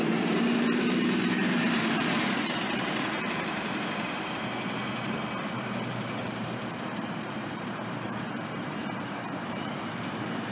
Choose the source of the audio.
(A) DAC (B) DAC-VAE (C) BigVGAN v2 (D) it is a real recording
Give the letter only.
C